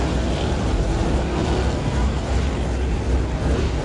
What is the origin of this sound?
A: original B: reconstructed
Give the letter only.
A